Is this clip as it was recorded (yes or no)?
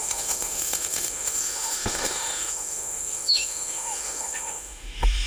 no